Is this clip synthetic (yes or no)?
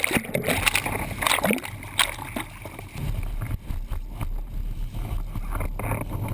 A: no